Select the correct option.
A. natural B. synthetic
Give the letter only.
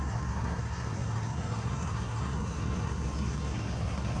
B